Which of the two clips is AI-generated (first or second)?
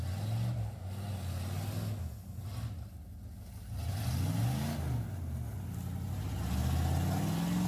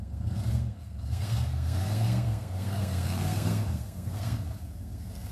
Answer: second